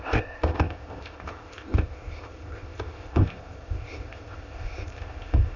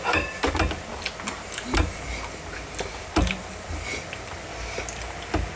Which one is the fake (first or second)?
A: first